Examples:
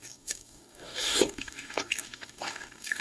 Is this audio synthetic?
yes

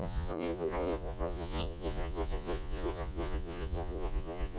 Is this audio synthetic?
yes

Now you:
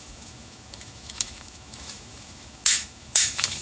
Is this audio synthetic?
yes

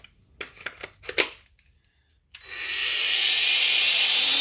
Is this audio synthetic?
no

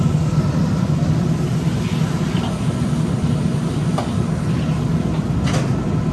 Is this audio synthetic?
no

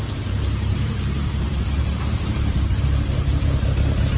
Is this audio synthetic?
yes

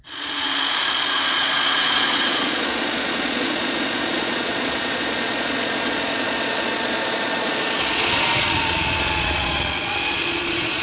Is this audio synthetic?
yes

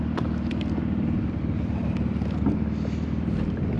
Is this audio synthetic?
no